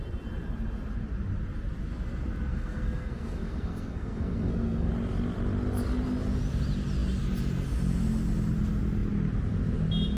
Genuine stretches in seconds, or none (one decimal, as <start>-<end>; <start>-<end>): 0.0-2.5; 4.9-10.2